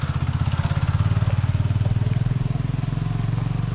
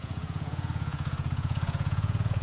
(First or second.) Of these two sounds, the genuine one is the first